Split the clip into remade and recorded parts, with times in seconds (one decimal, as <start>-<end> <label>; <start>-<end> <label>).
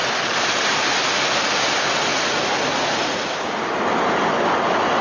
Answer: 0.0-2.1 recorded; 2.1-3.2 remade; 3.2-5.0 recorded